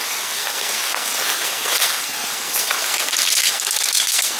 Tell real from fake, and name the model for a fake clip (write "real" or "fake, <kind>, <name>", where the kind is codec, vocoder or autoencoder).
fake, codec, SNAC